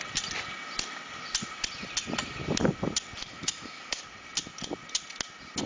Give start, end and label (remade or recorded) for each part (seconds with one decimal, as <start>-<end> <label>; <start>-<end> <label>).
0.0-3.2 recorded; 3.2-4.0 remade; 4.0-5.7 recorded